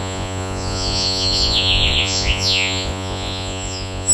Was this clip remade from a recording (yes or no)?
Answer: yes